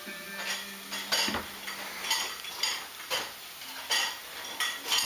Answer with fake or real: real